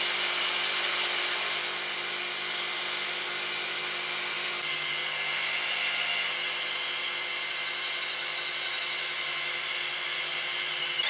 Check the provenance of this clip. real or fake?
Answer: real